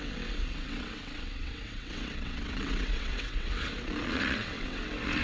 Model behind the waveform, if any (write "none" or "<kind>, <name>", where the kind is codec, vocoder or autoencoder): vocoder, WaveNeXt